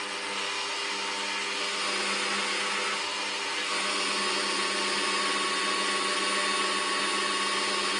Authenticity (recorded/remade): recorded